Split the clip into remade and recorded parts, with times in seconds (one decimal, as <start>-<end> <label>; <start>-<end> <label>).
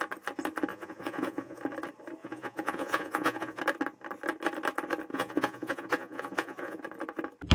0.0-0.7 recorded; 0.7-1.6 remade; 1.6-2.2 recorded; 2.2-3.6 remade; 3.6-5.1 recorded; 5.1-6.8 remade; 6.8-7.5 recorded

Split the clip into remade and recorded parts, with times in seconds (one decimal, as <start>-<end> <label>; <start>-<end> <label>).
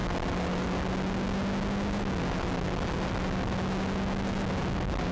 0.0-5.1 recorded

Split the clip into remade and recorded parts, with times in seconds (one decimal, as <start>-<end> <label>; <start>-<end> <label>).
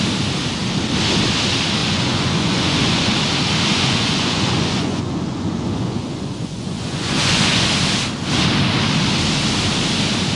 0.0-1.8 recorded; 1.8-3.2 remade; 3.2-3.7 recorded; 3.7-7.7 remade; 7.7-10.4 recorded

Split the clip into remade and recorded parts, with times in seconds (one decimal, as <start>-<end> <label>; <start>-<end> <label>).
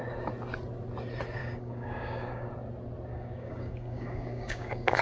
0.0-1.4 recorded; 1.4-2.5 remade; 2.5-3.1 recorded; 3.1-5.0 remade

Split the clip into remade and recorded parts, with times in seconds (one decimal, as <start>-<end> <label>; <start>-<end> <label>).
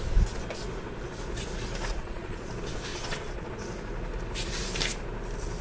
0.0-1.9 recorded; 1.9-2.5 remade; 2.5-2.9 recorded; 2.9-3.5 remade; 3.5-5.6 recorded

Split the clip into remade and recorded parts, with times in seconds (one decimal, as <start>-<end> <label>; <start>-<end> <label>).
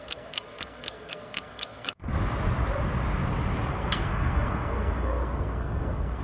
0.0-2.1 remade; 2.1-3.7 recorded; 3.7-6.2 remade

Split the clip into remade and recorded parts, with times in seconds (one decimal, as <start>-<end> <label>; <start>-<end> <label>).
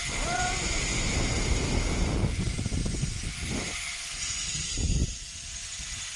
0.0-1.1 remade; 1.1-2.3 recorded; 2.3-4.5 remade; 4.5-6.2 recorded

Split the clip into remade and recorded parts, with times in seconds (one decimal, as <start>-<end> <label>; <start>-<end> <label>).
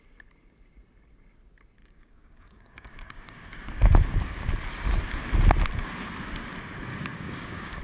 0.0-1.8 recorded; 1.8-4.5 remade; 4.5-6.9 recorded; 6.9-7.8 remade